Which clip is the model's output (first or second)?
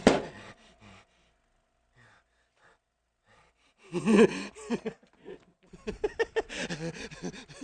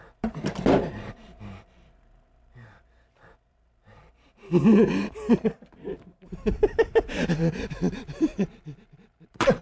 second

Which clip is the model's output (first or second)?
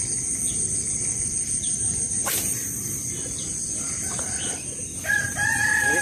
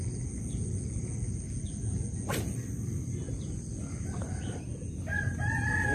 first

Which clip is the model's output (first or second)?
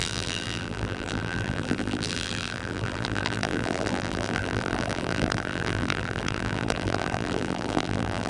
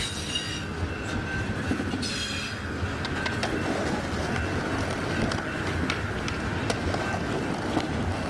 first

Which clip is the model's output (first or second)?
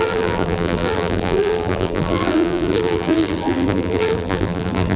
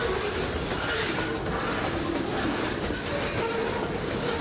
first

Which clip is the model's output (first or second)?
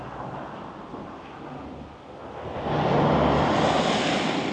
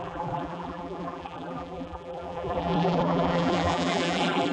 second